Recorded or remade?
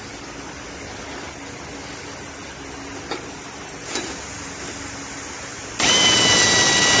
recorded